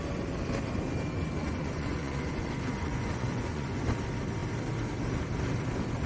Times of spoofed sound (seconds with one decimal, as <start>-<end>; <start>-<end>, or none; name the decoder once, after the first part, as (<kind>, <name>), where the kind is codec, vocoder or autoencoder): 1.4-3.8 (vocoder, Vocos)